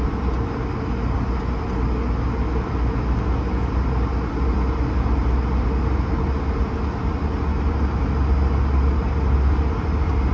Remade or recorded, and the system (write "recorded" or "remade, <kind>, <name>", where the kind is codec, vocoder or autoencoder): recorded